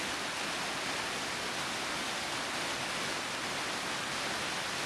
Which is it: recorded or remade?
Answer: recorded